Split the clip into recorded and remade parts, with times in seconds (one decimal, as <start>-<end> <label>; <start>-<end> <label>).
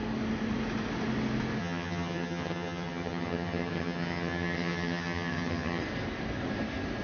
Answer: 0.0-1.6 recorded; 1.6-5.8 remade; 5.8-7.0 recorded